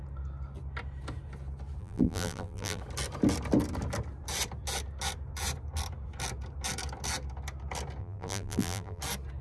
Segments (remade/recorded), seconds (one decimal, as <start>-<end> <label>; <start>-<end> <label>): 0.0-1.8 recorded; 1.8-2.8 remade; 2.8-8.0 recorded; 8.0-9.0 remade; 9.0-9.4 recorded